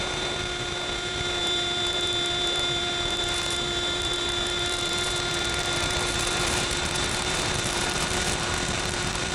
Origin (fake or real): fake